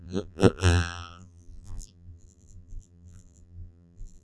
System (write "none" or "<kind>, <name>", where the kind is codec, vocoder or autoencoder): vocoder, BigVGAN v2